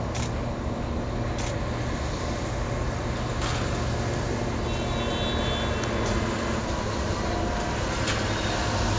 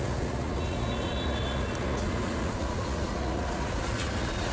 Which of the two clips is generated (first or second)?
second